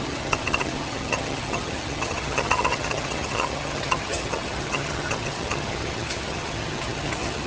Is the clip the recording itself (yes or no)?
no